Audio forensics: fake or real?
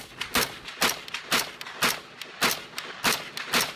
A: real